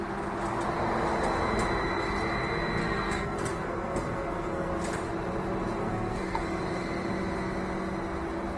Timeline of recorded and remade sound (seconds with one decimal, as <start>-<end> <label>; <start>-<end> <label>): 0.0-2.8 recorded; 2.8-4.7 remade; 4.7-5.8 recorded; 5.8-6.6 remade; 6.6-8.6 recorded